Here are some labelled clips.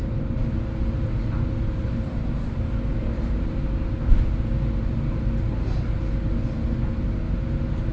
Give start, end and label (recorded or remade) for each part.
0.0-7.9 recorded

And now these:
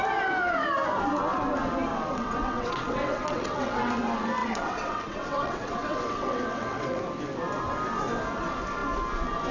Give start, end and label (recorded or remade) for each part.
0.0-1.9 recorded; 1.9-3.9 remade; 3.9-4.4 recorded; 4.4-7.0 remade; 7.0-9.5 recorded

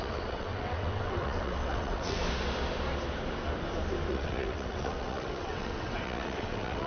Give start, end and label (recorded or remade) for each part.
0.0-2.2 remade; 2.2-4.1 recorded; 4.1-6.9 remade